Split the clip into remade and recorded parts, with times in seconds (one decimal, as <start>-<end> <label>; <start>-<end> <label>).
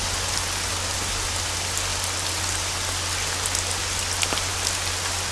0.0-5.3 recorded